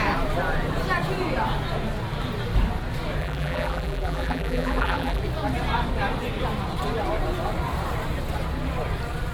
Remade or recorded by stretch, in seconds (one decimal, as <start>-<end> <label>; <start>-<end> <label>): 0.0-3.2 recorded; 3.2-5.2 remade; 5.2-9.3 recorded